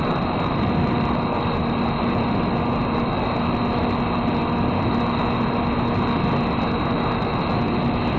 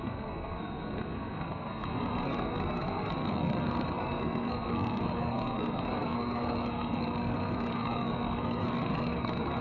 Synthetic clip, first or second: second